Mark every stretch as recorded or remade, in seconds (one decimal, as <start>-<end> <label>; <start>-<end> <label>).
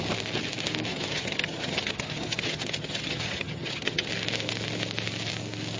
0.0-0.9 recorded; 0.9-4.1 remade; 4.1-5.8 recorded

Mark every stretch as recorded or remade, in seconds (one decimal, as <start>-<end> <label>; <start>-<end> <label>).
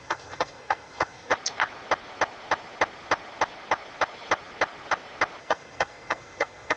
0.0-1.3 remade; 1.3-5.4 recorded; 5.4-6.8 remade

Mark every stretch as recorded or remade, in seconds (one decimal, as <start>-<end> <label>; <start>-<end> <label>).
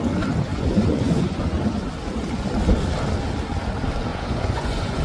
0.0-0.5 recorded; 0.5-1.4 remade; 1.4-4.1 recorded; 4.1-5.0 remade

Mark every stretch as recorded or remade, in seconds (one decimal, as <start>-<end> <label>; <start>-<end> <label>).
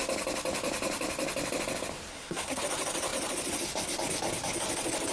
0.0-2.1 recorded; 2.1-2.6 remade; 2.6-5.1 recorded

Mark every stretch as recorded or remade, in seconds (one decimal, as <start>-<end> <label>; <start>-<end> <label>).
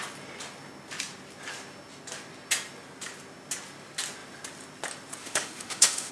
0.0-5.2 recorded; 5.2-6.1 remade